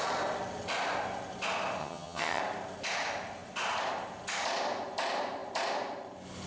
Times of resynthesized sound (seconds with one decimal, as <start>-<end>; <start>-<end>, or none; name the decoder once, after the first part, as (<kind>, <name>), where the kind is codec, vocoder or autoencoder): 1.8-2.4 (vocoder, HiFi-GAN)